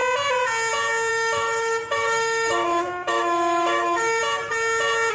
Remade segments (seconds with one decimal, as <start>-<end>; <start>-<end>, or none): 1.1-4.2